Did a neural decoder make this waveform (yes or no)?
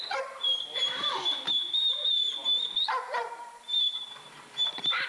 yes